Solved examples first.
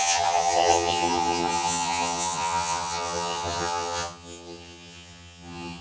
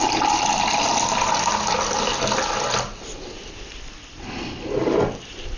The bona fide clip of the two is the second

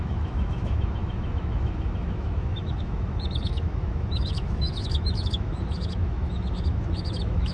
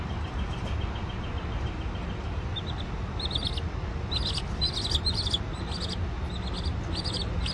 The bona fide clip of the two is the second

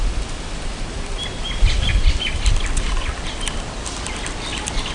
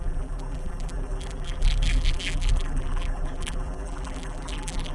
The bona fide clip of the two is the first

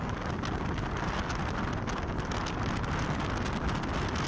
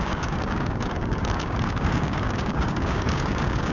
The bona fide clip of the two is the first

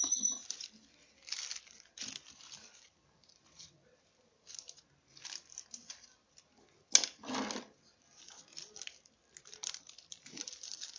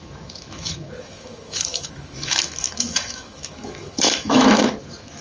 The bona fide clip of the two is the first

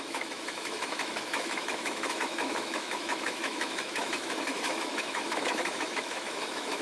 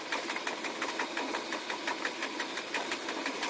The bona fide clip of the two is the second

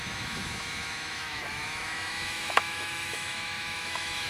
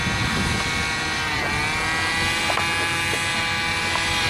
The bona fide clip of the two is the second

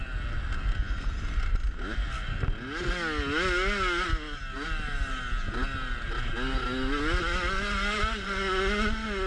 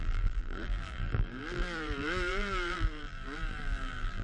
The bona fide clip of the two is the first